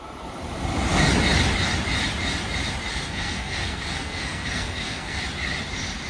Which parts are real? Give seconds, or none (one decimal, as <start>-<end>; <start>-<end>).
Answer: 0.0-2.9; 5.2-6.1